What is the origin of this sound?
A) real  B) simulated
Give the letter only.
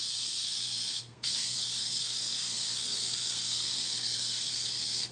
B